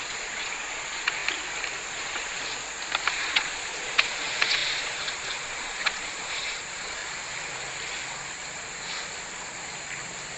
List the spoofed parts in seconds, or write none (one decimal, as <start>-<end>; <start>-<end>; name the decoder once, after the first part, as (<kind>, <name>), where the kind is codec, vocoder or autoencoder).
0.0-1.2 (vocoder, Vocos); 1.9-2.4; 3.1-7.0